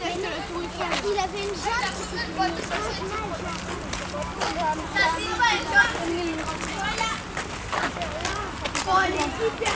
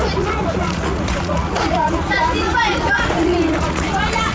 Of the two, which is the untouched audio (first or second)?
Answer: first